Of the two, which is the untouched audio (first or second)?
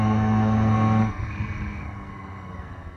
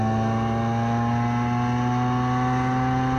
second